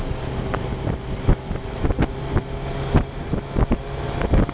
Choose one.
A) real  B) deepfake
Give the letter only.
A